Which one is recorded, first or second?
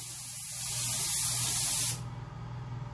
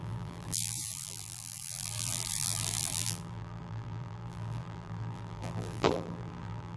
first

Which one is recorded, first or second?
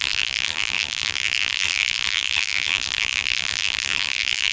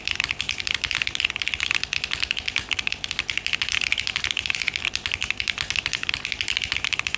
second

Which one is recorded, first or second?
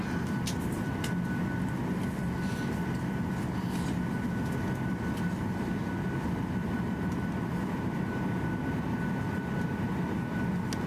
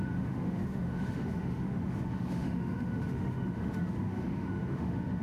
first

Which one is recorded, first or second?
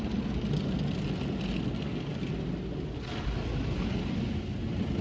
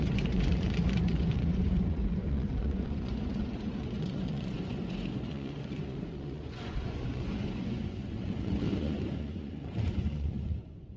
first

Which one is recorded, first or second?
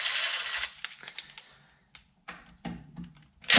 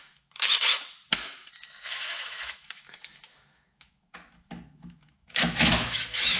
first